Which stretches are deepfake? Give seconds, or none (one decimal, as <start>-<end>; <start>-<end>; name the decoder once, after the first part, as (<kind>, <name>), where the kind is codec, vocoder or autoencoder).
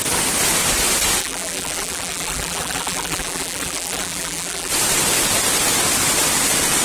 1.2-4.7 (vocoder, BigVGAN v2)